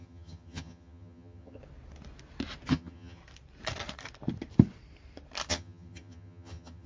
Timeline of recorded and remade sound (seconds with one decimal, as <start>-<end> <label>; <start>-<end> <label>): 0.0-1.6 remade; 1.6-2.7 recorded; 2.7-3.2 remade; 3.2-5.5 recorded; 5.5-6.9 remade